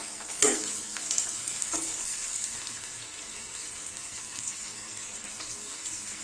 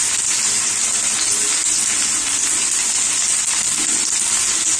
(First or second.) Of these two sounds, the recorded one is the second